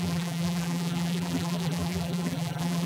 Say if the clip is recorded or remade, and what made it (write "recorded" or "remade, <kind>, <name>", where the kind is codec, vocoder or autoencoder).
remade, vocoder, BigVGAN v2